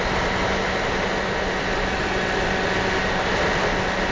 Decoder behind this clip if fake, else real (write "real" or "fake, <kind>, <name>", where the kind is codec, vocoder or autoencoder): real